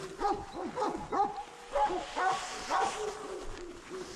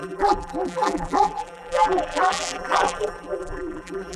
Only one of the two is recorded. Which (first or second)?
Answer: first